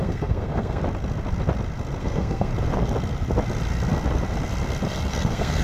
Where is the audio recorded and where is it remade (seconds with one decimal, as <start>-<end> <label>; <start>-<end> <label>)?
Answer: 0.0-0.8 remade; 0.8-2.0 recorded; 2.0-2.5 remade; 2.5-5.1 recorded; 5.1-5.6 remade